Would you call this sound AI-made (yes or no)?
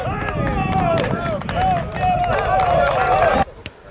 no